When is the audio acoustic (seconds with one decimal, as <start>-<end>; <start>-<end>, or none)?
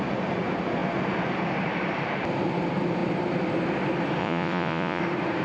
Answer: 0.0-4.2; 5.0-5.4